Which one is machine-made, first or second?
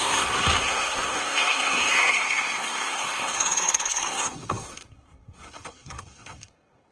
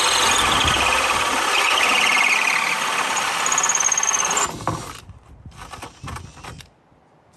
first